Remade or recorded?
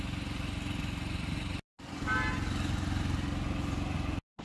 recorded